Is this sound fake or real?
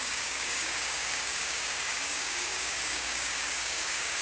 fake